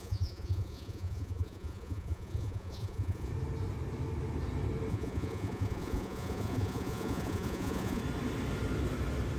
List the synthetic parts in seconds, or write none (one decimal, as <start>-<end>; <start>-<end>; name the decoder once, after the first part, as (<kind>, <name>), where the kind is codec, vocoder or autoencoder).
0.0-3.3 (vocoder, Vocos); 4.9-8.0